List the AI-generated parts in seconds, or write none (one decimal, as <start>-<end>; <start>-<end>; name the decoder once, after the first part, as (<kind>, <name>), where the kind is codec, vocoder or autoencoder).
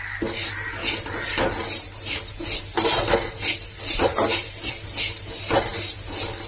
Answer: none